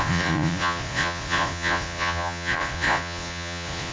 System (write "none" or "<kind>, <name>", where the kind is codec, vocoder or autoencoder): vocoder, Vocos